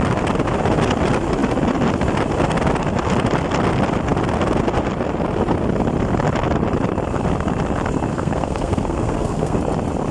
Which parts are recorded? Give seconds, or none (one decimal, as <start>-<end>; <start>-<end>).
0.0-8.1; 9.6-10.1